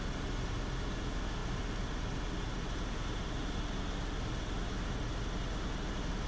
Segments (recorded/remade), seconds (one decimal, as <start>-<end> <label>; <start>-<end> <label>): 0.0-6.3 recorded